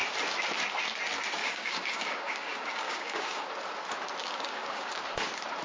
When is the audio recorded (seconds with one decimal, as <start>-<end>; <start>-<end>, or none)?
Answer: 0.0-1.4; 3.5-4.2; 4.9-5.6